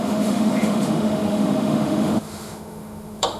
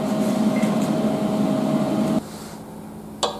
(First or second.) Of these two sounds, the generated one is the first